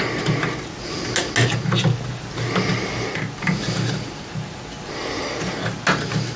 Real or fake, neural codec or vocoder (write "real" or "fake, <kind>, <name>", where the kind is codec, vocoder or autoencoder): real